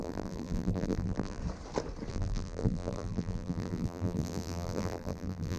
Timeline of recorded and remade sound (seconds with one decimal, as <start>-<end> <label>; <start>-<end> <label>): 0.0-1.4 remade; 1.4-2.1 recorded; 2.1-5.6 remade